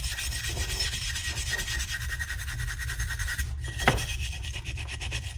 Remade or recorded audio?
recorded